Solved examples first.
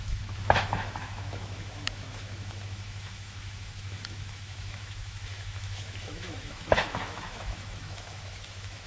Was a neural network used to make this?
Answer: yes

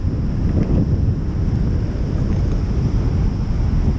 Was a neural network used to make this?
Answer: no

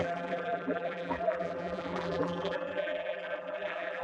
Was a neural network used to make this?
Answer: yes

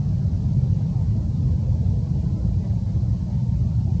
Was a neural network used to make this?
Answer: no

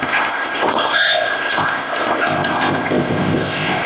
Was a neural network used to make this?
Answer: yes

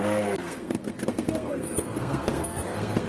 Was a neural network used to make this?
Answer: yes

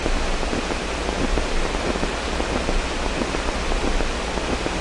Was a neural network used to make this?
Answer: no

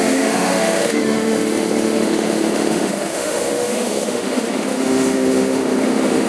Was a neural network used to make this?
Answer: yes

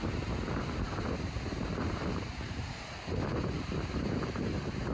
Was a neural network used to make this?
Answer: yes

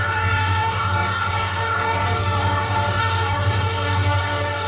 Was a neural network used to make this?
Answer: yes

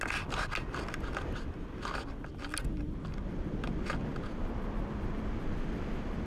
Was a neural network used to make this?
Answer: no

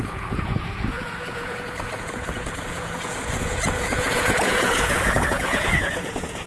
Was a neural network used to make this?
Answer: yes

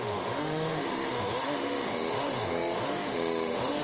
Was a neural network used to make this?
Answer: yes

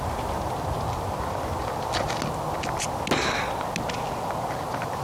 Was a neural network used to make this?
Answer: no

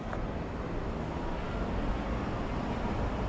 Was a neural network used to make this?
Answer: no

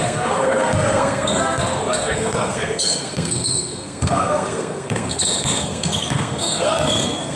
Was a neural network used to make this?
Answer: yes